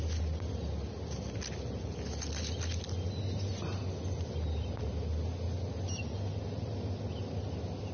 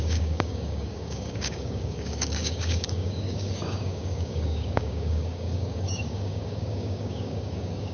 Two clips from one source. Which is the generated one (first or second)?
second